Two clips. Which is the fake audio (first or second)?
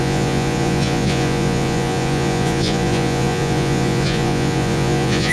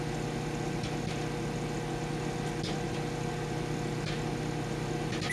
first